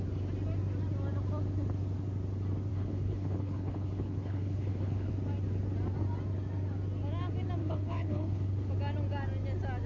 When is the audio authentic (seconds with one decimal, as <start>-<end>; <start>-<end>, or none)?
0.0-2.7; 5.1-7.6; 8.7-9.9